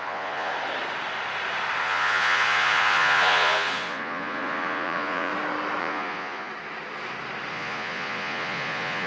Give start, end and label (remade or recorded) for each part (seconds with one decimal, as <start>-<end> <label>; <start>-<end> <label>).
0.0-0.5 remade; 0.5-1.8 recorded; 1.8-5.3 remade; 5.3-5.8 recorded; 5.8-6.5 remade; 6.5-7.5 recorded; 7.5-9.1 remade

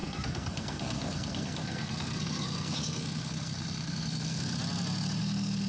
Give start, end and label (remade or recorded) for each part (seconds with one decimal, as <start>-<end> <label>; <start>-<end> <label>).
0.0-4.5 remade; 4.5-5.2 recorded; 5.2-5.7 remade

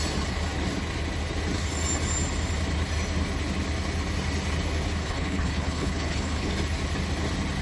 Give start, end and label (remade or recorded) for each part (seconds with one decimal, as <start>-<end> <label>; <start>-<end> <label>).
0.0-5.0 recorded; 5.0-6.5 remade; 6.5-7.6 recorded

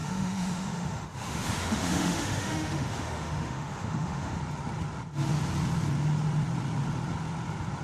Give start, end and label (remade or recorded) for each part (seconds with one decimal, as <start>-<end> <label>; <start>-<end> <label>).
0.0-4.4 remade; 4.4-7.8 recorded

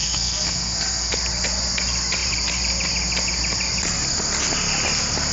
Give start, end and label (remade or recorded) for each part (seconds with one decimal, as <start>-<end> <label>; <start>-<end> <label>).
0.0-1.1 remade; 1.1-5.3 recorded

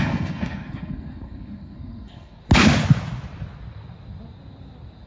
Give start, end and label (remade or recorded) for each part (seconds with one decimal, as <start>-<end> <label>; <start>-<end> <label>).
0.0-2.4 remade; 2.4-5.1 recorded